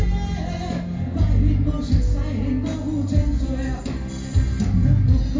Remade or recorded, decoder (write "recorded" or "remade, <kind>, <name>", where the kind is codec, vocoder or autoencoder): recorded